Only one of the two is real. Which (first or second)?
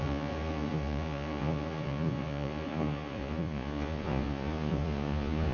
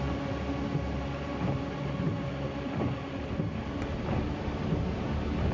second